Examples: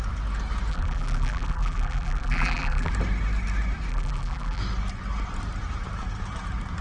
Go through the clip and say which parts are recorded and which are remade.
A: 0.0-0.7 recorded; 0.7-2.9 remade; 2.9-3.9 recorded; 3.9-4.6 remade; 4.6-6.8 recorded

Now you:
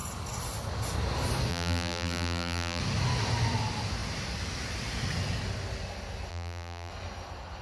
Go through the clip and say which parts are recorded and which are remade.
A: 0.0-1.5 recorded; 1.5-2.8 remade; 2.8-6.3 recorded; 6.3-6.9 remade; 6.9-7.6 recorded

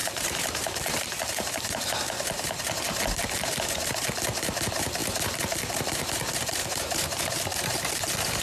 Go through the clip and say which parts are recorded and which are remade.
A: 0.0-3.0 remade; 3.0-6.6 recorded; 6.6-8.0 remade; 8.0-8.4 recorded

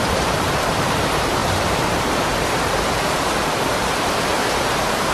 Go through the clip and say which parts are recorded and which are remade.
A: 0.0-4.3 remade; 4.3-5.1 recorded

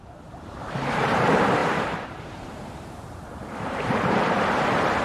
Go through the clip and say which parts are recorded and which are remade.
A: 0.0-1.6 recorded; 1.6-4.2 remade; 4.2-5.0 recorded